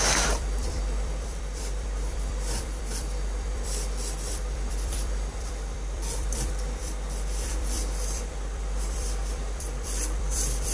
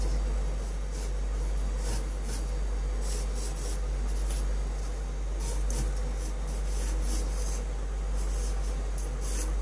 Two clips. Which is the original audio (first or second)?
second